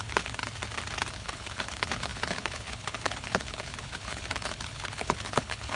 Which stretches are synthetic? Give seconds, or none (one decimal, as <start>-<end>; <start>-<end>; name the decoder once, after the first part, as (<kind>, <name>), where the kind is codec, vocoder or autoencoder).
0.0-0.4 (codec, HILCodec); 1.1-5.8